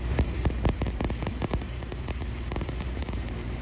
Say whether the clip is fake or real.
fake